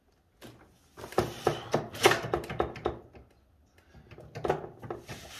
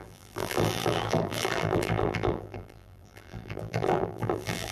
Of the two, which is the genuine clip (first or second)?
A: first